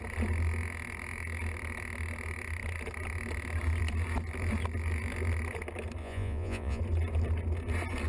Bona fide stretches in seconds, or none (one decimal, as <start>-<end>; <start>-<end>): 0.0-6.0; 6.8-8.1